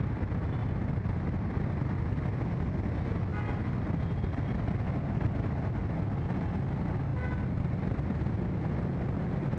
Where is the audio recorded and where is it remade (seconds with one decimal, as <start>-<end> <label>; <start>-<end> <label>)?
0.0-9.6 recorded